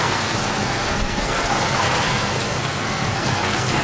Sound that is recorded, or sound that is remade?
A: remade